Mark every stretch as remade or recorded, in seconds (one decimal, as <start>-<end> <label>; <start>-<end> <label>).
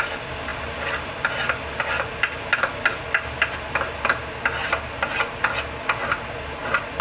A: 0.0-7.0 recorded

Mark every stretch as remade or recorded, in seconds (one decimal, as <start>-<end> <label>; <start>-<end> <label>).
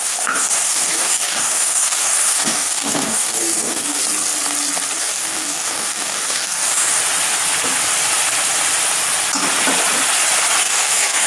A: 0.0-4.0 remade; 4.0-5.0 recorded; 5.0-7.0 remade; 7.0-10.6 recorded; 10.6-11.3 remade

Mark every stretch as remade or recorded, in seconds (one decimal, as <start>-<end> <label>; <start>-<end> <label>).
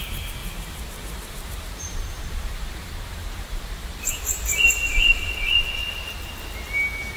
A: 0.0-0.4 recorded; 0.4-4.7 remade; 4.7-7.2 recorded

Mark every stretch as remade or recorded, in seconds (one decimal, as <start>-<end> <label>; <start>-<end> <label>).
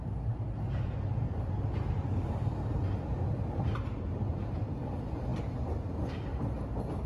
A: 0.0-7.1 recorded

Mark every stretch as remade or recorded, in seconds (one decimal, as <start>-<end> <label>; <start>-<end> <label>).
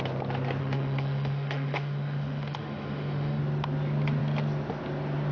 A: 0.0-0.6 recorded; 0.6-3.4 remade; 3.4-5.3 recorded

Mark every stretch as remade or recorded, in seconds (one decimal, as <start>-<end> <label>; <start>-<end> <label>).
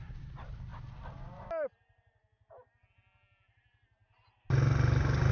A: 0.0-5.3 recorded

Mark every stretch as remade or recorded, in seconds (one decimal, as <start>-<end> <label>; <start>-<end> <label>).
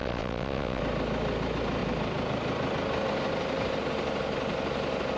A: 0.0-0.8 remade; 0.8-5.2 recorded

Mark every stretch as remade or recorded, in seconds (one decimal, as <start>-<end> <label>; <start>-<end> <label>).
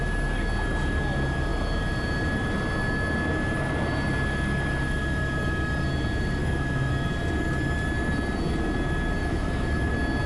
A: 0.0-6.4 recorded; 6.4-6.9 remade; 6.9-9.2 recorded; 9.2-9.9 remade; 9.9-10.3 recorded